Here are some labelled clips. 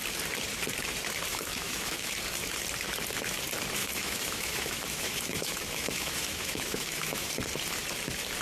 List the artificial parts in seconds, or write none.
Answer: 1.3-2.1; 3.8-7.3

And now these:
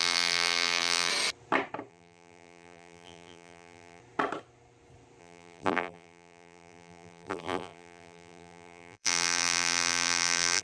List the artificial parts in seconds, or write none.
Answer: 0.0-1.1; 1.9-4.0; 5.2-10.6

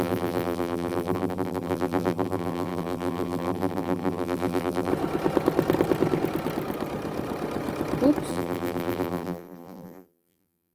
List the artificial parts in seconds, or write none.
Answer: 0.0-4.9; 8.3-10.7

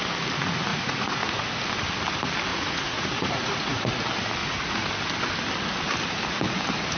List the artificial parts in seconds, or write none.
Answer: 0.7-1.4; 2.5-3.9; 4.4-4.9

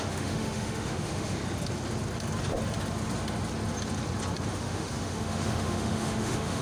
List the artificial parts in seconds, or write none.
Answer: 0.0-1.4; 4.5-6.6